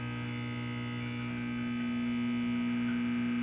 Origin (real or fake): real